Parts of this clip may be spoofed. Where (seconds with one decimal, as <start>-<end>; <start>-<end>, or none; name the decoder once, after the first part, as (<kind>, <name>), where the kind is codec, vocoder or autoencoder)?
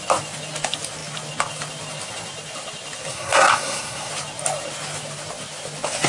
3.1-4.1 (codec, SNAC)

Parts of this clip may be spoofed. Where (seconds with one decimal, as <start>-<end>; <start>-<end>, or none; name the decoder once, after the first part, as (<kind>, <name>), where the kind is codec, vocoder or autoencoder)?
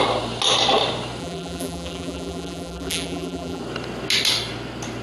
1.2-3.6 (vocoder, BigVGAN v2)